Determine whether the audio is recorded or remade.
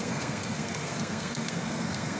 remade